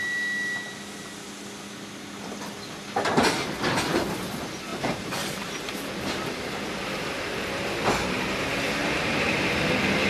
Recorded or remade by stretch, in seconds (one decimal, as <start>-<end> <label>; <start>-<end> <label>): 0.0-4.7 recorded; 4.7-6.4 remade; 6.4-8.8 recorded; 8.8-9.5 remade; 9.5-10.1 recorded